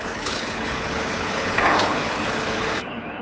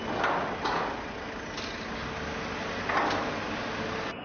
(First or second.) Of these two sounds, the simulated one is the first